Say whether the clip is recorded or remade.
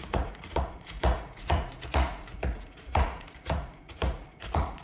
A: remade